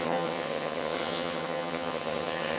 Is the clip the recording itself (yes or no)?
no